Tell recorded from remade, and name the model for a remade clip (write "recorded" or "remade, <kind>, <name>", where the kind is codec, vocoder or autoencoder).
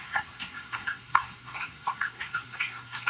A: remade, codec, SNAC